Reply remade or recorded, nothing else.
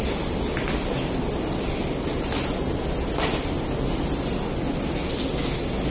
recorded